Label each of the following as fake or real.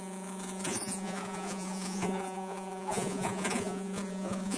fake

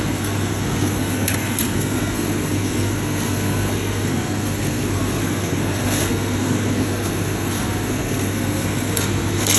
fake